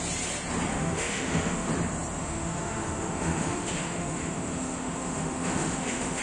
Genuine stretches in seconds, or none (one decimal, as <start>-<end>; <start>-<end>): 0.0-0.7; 1.7-2.2